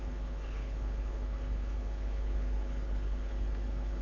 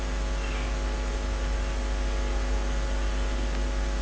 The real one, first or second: second